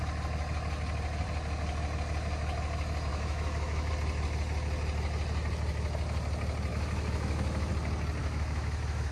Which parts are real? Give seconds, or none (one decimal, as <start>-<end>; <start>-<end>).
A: 0.0-3.1; 3.9-6.7; 7.7-8.2